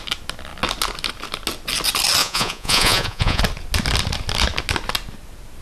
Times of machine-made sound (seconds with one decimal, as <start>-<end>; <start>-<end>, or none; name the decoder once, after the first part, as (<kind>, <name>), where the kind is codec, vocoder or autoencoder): 2.2-3.4 (vocoder, Vocos)